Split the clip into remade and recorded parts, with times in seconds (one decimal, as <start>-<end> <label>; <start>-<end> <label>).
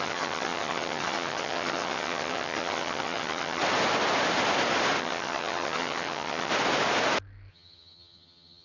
0.0-3.6 remade; 3.6-5.0 recorded; 5.0-6.5 remade; 6.5-7.5 recorded; 7.5-8.6 remade